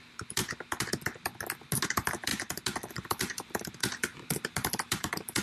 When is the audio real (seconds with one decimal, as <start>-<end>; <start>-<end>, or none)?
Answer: 0.4-1.9; 2.3-2.9; 4.1-4.7